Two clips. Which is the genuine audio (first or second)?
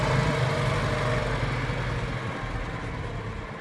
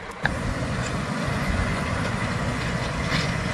first